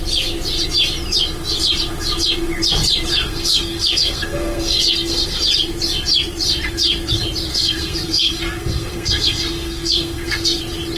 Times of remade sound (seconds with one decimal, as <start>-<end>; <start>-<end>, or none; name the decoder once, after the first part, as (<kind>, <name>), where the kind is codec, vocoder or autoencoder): 3.1-5.4 (codec, SNAC); 7.5-10.6